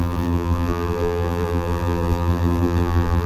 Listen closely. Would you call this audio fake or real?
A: fake